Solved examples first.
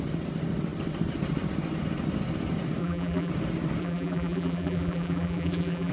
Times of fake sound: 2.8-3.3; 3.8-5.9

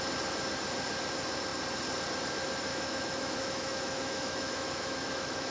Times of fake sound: 2.7-5.5

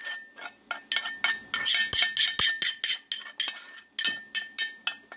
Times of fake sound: none

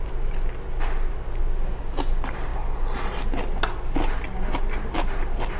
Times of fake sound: none

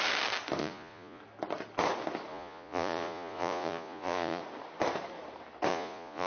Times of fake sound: 0.6-1.2; 2.3-4.4; 5.7-6.3

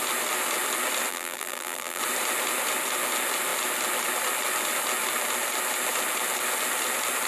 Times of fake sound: 1.1-2.0

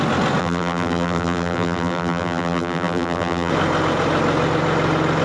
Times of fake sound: 0.4-3.5